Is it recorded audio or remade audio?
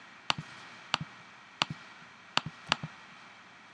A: recorded